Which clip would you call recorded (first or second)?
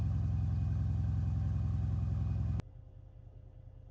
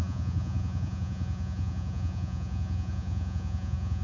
first